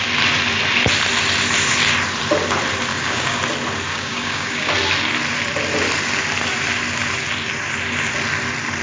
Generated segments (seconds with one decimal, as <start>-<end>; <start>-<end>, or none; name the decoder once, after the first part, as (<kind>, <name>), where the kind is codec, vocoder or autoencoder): 2.9-3.4 (codec, DAC); 3.9-4.7